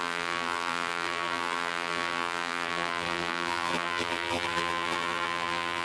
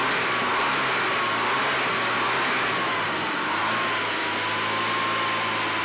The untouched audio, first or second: second